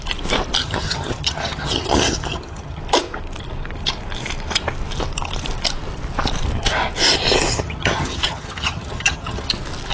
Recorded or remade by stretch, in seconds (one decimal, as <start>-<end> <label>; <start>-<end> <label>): 0.0-0.6 recorded; 0.6-2.8 remade; 2.8-7.5 recorded; 7.5-9.5 remade; 9.5-9.9 recorded

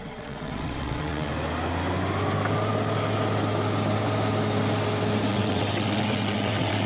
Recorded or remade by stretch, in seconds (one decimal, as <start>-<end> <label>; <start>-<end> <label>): 0.0-1.3 remade; 1.3-5.3 recorded; 5.3-6.9 remade

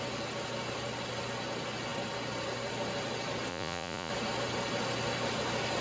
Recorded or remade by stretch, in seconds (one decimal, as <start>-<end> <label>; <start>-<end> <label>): 0.0-3.5 recorded; 3.5-4.1 remade; 4.1-5.8 recorded

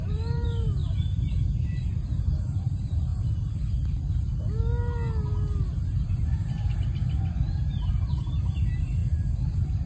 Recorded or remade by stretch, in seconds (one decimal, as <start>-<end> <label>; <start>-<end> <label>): 0.0-0.8 remade; 0.8-2.2 recorded; 2.2-3.1 remade; 3.1-7.3 recorded; 7.3-9.0 remade; 9.0-9.9 recorded

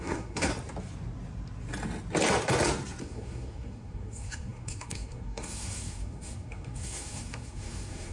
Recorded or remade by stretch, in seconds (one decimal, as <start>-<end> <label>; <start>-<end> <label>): 0.0-0.5 remade; 0.5-3.0 recorded; 3.0-8.1 remade

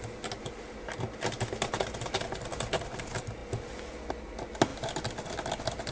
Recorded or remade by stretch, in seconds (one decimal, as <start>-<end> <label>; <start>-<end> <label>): 0.0-5.9 recorded

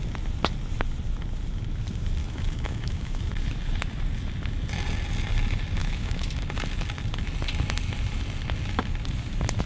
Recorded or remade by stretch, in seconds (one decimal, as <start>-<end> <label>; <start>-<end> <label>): 0.0-2.2 recorded; 2.2-3.2 remade; 3.2-5.8 recorded; 5.8-6.3 remade; 6.3-9.7 recorded

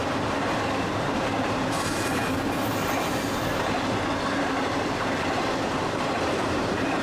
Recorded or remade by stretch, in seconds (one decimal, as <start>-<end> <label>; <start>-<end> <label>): 0.0-0.7 recorded; 0.7-2.2 remade; 2.2-4.2 recorded; 4.2-7.0 remade